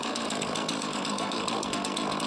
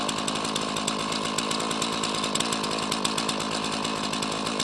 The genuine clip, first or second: second